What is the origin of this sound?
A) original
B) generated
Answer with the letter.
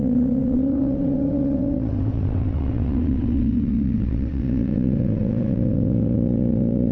B